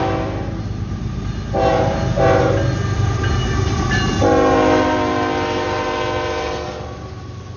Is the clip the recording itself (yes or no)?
yes